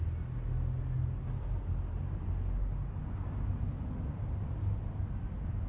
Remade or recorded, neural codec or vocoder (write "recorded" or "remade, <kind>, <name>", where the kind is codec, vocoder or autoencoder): recorded